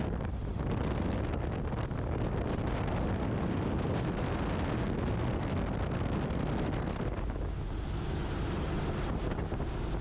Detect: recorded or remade recorded